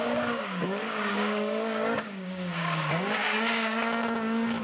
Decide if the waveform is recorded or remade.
remade